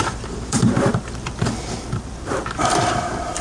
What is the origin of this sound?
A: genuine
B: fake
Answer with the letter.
B